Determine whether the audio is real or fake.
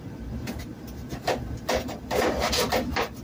real